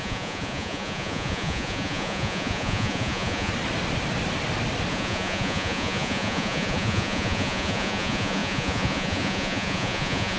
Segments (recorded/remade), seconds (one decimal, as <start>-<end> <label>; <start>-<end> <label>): 0.0-3.5 remade; 3.5-4.9 recorded; 4.9-10.4 remade

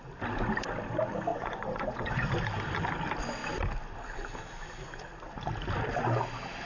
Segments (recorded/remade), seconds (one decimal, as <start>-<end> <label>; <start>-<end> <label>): 0.0-1.3 recorded; 1.3-2.3 remade; 2.3-6.7 recorded

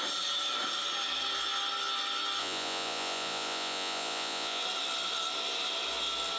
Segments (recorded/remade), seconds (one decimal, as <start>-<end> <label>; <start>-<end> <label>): 0.0-2.4 recorded; 2.4-4.6 remade; 4.6-6.4 recorded

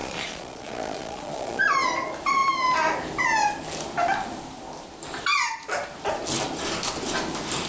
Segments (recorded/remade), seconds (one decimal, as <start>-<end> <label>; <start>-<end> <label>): 0.0-1.6 remade; 1.6-7.7 recorded

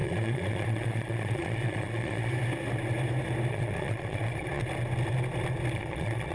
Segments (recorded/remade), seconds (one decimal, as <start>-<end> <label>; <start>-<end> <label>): 0.0-2.3 remade; 2.3-3.5 recorded; 3.5-4.6 remade; 4.6-5.7 recorded; 5.7-6.3 remade

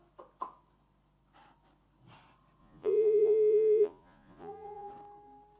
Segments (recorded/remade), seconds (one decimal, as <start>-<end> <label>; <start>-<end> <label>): 0.0-2.6 recorded; 2.6-4.9 remade; 4.9-5.6 recorded

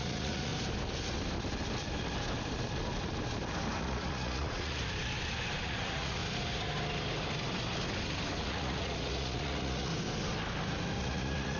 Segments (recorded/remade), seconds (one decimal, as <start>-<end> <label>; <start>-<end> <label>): 0.0-0.5 remade; 0.5-3.8 recorded; 3.8-4.8 remade; 4.8-5.6 recorded; 5.6-6.2 remade; 6.2-8.4 recorded; 8.4-9.9 remade; 9.9-11.0 recorded; 11.0-11.6 remade